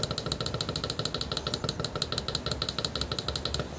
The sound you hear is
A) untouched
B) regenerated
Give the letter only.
A